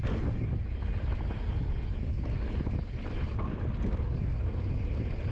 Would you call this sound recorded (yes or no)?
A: yes